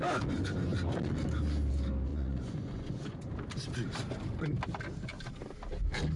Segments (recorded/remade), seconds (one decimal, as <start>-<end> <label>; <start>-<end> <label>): 0.0-2.1 recorded; 2.1-3.3 remade; 3.3-6.2 recorded